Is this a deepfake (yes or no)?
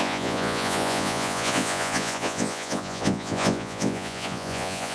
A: yes